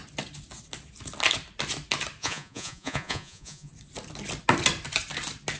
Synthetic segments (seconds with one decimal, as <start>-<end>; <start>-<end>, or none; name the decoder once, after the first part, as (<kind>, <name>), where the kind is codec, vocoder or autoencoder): 2.2-3.7 (vocoder, Vocos)